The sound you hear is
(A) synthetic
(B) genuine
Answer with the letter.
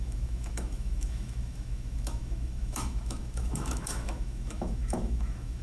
A